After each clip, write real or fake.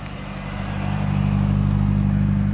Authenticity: real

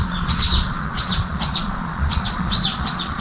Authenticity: fake